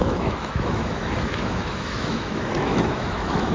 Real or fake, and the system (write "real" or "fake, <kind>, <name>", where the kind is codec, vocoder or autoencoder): fake, autoencoder, DAC-VAE